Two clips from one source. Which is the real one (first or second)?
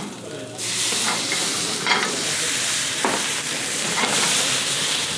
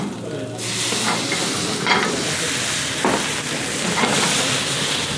second